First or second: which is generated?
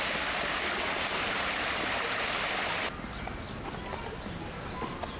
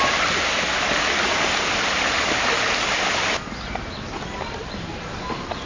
second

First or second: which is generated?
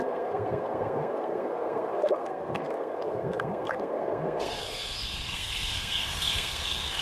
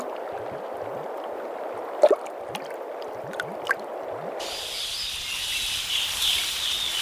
first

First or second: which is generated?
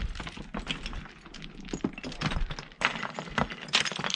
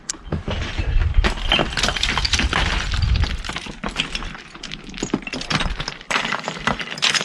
second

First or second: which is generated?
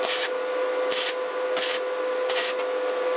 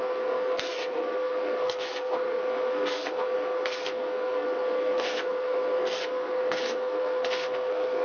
second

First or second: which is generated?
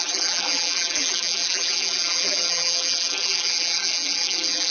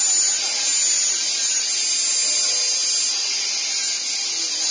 first